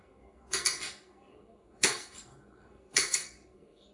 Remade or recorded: remade